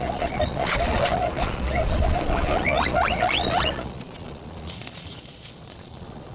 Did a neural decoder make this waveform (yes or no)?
yes